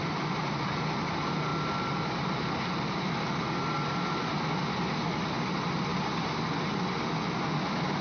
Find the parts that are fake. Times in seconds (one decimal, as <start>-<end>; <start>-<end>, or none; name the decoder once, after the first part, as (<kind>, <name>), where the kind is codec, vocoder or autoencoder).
none